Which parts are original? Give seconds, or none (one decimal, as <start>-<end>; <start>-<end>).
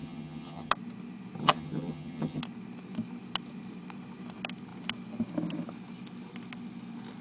0.7-1.4; 2.4-7.2